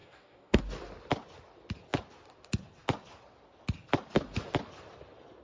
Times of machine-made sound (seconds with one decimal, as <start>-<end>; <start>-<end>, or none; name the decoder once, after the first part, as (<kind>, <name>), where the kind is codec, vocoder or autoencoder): 0.0-0.6 (codec, DAC)